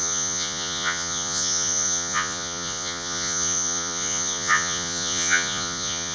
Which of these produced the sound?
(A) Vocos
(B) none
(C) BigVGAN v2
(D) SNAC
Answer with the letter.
A